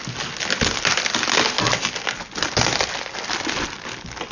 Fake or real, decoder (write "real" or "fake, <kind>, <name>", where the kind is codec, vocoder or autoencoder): real